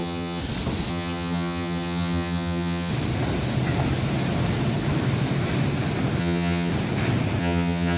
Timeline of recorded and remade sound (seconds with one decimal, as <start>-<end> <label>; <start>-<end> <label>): 0.0-0.4 remade; 0.4-0.9 recorded; 0.9-2.9 remade; 2.9-6.2 recorded; 6.2-6.7 remade; 6.7-7.4 recorded; 7.4-8.0 remade

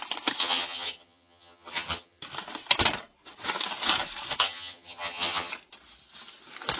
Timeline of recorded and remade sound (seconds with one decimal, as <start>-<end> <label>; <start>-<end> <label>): 0.0-0.4 recorded; 0.4-2.2 remade; 2.2-4.4 recorded; 4.4-5.5 remade; 5.5-6.8 recorded

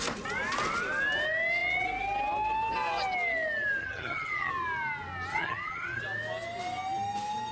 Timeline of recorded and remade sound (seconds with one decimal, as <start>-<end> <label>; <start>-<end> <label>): 0.0-3.8 recorded; 3.8-4.5 remade; 4.5-5.3 recorded; 5.3-6.0 remade; 6.0-7.5 recorded

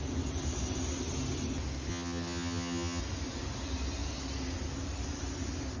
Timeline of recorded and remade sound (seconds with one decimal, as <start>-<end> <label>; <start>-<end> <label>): 0.0-1.9 recorded; 1.9-3.0 remade; 3.0-5.8 recorded

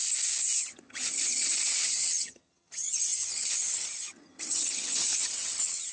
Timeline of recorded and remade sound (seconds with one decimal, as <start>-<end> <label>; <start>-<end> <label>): 0.0-0.6 recorded; 0.6-5.9 remade